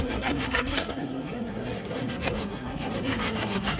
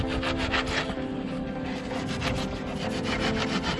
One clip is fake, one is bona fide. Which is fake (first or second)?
first